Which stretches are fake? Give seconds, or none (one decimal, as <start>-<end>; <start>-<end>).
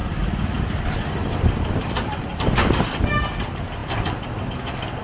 0.0-3.0